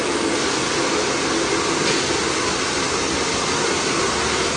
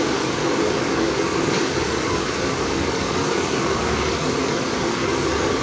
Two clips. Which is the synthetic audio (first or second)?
second